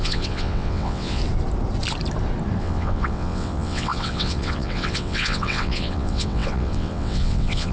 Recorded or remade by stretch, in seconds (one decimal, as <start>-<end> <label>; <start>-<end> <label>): 0.0-1.2 remade; 1.2-2.6 recorded; 2.6-7.7 remade

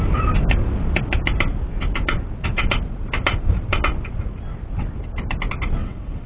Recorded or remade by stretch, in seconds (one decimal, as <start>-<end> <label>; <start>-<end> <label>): 0.0-5.8 recorded; 5.8-6.3 remade

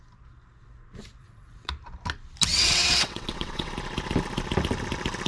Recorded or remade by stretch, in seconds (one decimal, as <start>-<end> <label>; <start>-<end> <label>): 0.0-1.2 recorded; 1.2-1.7 remade; 1.7-2.5 recorded; 2.5-3.7 remade; 3.7-5.3 recorded

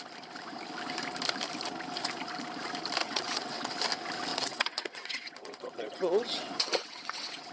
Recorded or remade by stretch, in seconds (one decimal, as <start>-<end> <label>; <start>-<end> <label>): 0.0-3.0 recorded; 3.0-3.7 remade; 3.7-4.3 recorded; 4.3-7.5 remade

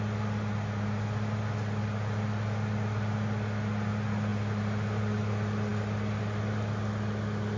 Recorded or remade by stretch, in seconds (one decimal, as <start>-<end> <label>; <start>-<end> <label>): 0.0-7.6 recorded

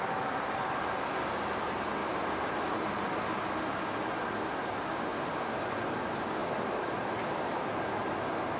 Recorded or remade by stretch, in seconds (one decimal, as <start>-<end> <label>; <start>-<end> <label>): 0.0-8.6 recorded